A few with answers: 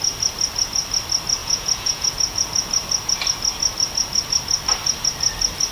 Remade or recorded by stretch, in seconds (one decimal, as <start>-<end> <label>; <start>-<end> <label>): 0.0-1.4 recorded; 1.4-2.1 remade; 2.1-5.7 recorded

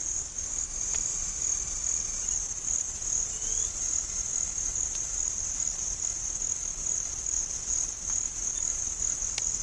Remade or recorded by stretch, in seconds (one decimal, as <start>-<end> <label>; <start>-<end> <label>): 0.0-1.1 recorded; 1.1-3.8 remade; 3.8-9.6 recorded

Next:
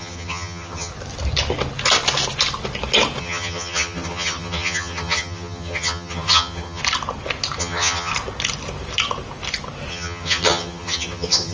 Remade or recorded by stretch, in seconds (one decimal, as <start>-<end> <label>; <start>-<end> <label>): 0.0-0.9 remade; 0.9-3.2 recorded; 3.2-6.8 remade; 6.8-7.6 recorded; 7.6-8.1 remade; 8.1-9.9 recorded; 9.9-11.5 remade

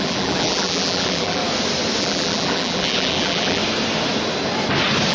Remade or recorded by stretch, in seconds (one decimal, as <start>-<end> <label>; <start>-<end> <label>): 0.0-1.4 remade; 1.4-2.0 recorded; 2.0-3.6 remade; 3.6-5.1 recorded

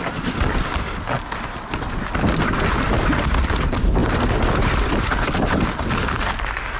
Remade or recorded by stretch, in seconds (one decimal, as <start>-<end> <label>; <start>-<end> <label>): 0.0-6.8 recorded